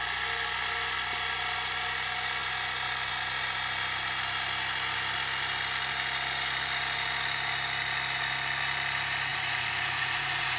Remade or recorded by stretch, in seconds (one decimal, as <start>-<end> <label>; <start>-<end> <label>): 0.0-9.3 recorded; 9.3-10.6 remade